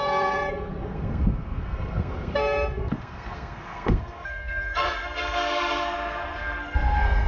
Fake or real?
fake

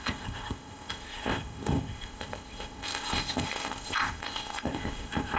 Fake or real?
fake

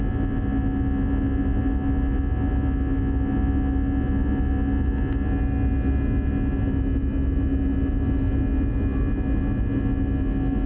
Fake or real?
real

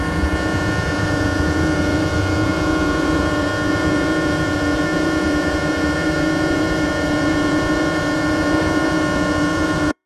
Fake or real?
fake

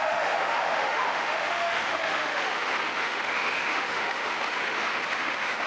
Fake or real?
fake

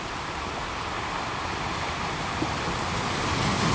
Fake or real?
real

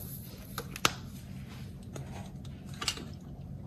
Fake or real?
real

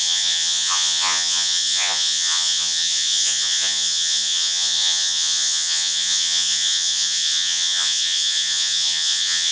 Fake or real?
fake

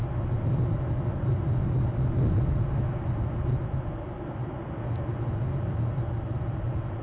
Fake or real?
real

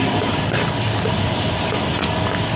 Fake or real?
real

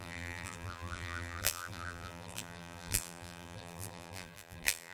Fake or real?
fake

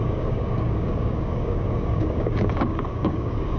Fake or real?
fake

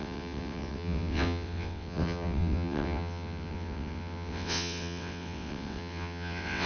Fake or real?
fake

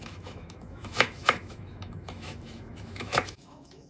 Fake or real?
fake